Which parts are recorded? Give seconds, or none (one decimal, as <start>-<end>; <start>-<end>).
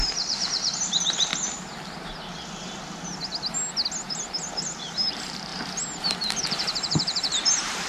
1.3-4.8; 5.5-6.4